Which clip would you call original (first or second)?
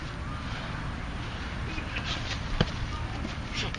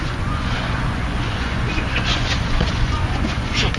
first